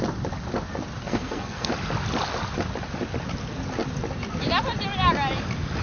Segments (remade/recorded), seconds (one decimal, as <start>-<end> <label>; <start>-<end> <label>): 0.0-1.0 recorded; 1.0-1.7 remade; 1.7-5.8 recorded